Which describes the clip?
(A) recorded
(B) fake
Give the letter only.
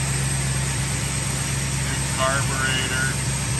A